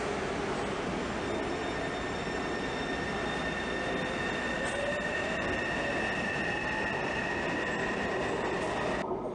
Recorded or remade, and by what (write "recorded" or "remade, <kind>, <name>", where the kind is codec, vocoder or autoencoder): recorded